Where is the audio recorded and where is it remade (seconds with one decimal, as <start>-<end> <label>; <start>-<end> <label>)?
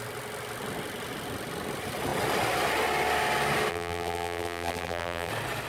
0.0-3.7 recorded; 3.7-5.3 remade; 5.3-5.7 recorded